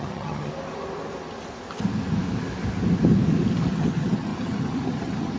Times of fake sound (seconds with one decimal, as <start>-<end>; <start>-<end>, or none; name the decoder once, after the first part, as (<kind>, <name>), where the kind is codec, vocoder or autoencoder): 0.0-0.5 (vocoder, HiFi-GAN); 3.7-5.4